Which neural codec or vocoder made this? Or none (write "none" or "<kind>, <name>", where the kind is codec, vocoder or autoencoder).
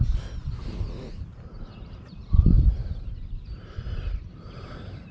vocoder, BigVGAN v2